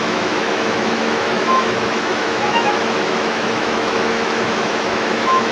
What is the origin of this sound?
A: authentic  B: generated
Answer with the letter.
B